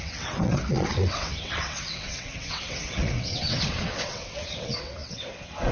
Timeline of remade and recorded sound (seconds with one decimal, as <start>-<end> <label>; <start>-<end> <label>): 0.0-5.7 remade